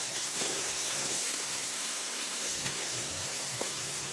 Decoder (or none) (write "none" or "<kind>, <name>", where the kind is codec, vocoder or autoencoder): codec, SNAC